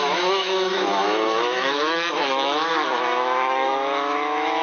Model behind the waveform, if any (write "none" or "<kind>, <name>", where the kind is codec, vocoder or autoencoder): autoencoder, DAC-VAE